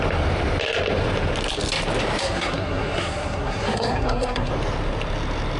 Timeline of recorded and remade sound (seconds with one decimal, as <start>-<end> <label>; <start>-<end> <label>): 0.0-2.2 recorded; 2.2-4.5 remade; 4.5-5.6 recorded